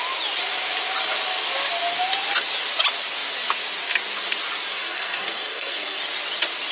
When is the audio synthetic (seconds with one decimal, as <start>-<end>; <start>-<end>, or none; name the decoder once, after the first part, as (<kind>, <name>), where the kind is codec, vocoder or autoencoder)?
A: 4.7-6.0 (codec, SNAC)